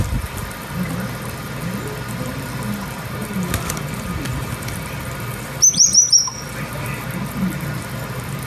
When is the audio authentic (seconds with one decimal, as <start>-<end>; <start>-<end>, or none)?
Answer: 0.0-8.5